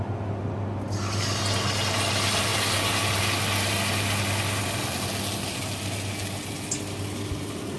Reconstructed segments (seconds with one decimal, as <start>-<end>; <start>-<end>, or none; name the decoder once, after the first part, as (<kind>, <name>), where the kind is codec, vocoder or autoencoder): none